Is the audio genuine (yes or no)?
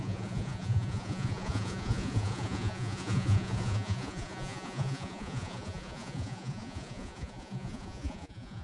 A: no